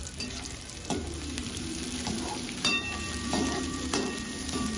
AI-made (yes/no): yes